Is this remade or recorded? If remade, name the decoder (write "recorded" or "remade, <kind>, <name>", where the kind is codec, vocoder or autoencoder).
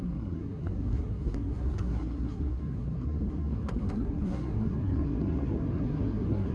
remade, codec, SNAC